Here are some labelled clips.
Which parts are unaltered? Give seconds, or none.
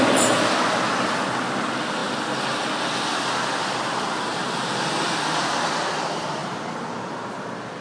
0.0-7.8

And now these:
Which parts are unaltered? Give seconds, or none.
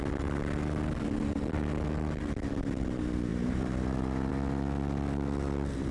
0.0-3.3; 4.3-5.9